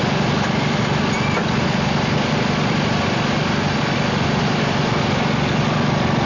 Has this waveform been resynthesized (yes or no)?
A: no